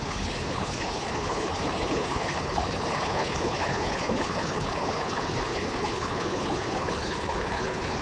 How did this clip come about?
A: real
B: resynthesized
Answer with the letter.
B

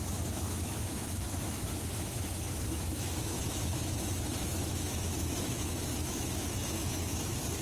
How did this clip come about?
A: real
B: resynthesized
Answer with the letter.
B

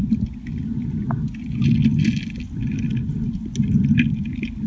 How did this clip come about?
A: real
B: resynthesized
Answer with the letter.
A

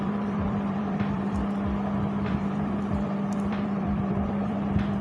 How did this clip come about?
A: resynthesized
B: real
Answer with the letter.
A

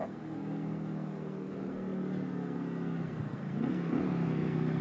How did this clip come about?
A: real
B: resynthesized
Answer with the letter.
B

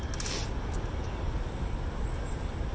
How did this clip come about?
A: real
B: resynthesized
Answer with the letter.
A